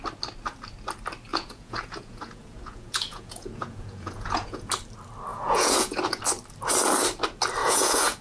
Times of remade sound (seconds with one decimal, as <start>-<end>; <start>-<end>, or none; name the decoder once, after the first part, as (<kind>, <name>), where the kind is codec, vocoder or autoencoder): 1.3-4.7 (vocoder, Vocos); 5.3-6.2; 7.6-8.2